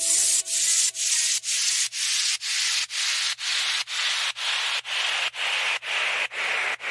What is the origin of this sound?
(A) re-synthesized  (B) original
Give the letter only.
B